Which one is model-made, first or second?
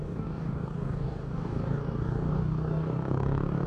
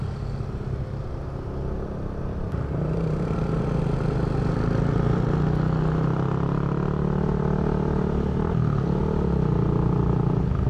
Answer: first